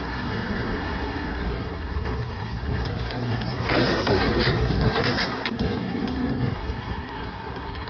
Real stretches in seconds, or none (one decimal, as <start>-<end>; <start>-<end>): none